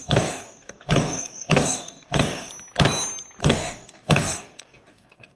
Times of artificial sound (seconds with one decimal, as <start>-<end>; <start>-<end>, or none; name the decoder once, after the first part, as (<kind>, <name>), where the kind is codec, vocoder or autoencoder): 0.0-2.5 (codec, DAC); 3.4-5.4